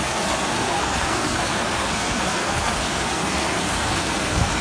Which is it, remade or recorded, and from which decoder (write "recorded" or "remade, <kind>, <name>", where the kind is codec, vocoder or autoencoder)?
remade, codec, SNAC